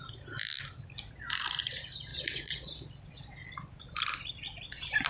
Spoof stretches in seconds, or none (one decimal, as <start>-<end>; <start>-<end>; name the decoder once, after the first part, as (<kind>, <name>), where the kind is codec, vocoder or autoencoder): 2.1-2.9 (vocoder, Vocos)